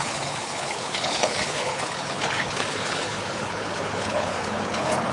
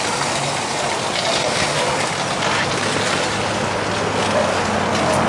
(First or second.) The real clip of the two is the second